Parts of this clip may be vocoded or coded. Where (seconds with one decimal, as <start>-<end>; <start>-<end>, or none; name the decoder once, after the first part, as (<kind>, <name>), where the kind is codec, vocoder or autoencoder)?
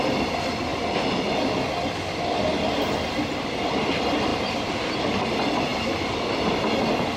none